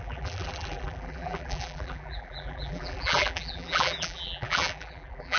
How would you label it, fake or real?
fake